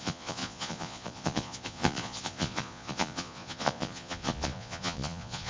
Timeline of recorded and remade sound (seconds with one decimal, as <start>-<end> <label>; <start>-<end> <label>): 0.0-5.5 remade